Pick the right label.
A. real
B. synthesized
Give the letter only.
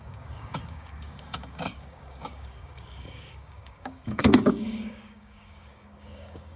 B